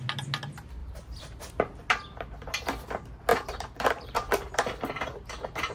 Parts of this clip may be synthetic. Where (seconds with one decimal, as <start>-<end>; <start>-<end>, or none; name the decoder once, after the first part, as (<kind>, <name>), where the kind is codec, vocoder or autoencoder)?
0.8-1.5 (vocoder, BigVGAN v2); 3.3-4.9